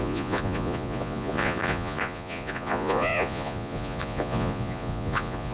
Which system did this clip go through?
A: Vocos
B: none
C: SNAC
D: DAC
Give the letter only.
A